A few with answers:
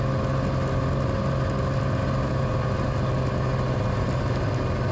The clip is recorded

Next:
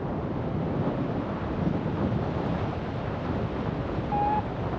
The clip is recorded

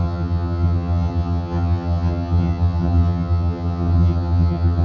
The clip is remade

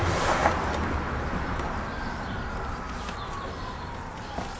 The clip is recorded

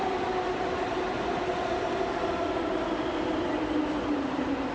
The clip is recorded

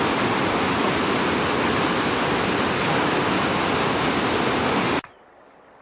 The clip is recorded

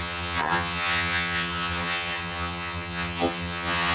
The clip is remade